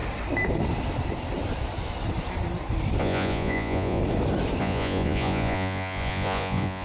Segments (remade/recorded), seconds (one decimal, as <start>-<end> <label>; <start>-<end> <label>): 0.0-3.0 recorded; 3.0-4.0 remade; 4.0-4.6 recorded; 4.6-6.8 remade